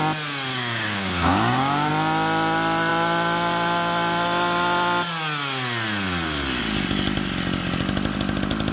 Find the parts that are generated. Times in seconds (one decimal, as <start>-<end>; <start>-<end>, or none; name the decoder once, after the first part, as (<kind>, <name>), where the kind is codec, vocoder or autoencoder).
0.5-1.9 (codec, DAC)